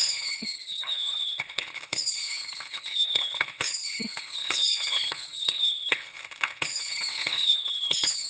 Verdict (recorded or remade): remade